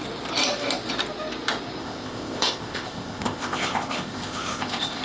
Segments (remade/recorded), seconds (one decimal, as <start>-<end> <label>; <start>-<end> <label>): 0.0-1.8 recorded; 1.8-5.0 remade